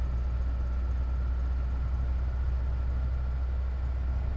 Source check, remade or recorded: recorded